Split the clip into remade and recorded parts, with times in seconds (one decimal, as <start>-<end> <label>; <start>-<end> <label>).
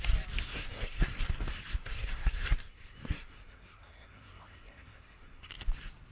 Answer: 0.0-0.5 recorded; 0.5-1.3 remade; 1.3-1.8 recorded; 1.8-5.5 remade; 5.5-6.1 recorded